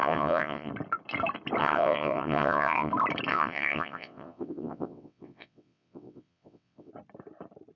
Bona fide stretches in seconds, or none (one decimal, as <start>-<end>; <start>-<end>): 0.7-1.6; 2.9-3.3; 6.9-7.8